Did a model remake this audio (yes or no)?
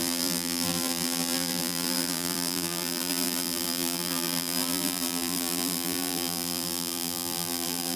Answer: yes